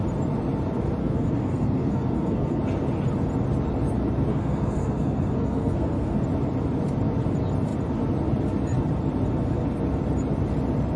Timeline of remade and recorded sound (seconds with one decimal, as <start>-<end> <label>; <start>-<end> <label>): 0.0-1.0 recorded; 1.0-2.6 remade; 2.6-4.3 recorded; 4.3-6.2 remade; 6.2-11.0 recorded